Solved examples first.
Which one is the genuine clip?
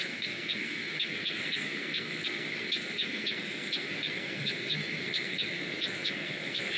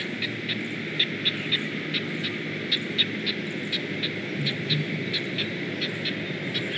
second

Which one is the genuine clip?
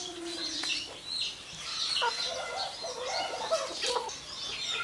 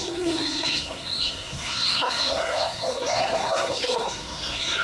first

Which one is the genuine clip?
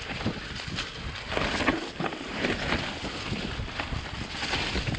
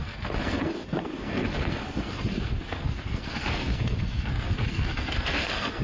first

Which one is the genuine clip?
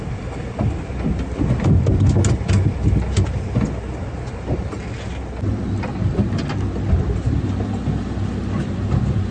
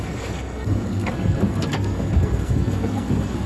first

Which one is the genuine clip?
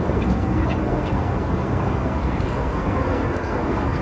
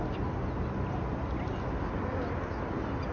second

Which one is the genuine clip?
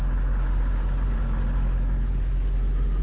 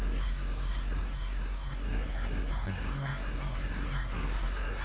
first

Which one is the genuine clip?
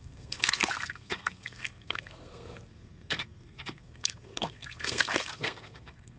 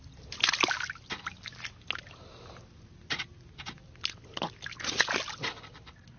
second